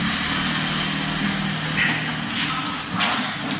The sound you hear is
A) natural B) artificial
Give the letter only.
A